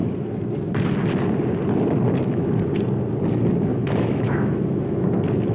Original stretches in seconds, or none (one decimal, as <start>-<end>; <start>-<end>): 0.0-3.7; 5.1-5.5